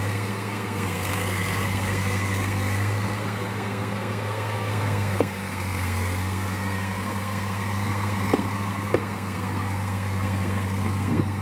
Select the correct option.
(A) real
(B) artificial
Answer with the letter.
B